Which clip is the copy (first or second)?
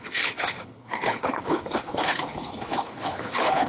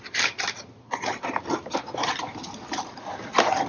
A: first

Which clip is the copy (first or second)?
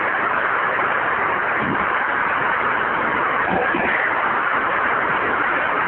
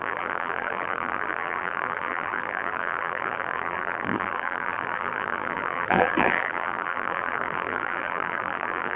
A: second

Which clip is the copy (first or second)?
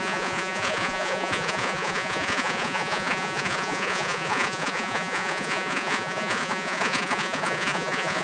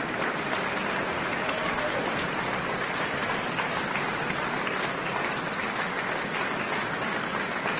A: first